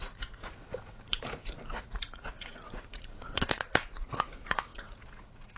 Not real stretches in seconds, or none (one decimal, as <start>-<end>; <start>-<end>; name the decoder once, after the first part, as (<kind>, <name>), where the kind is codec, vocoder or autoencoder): 0.0-5.6 (vocoder, Vocos)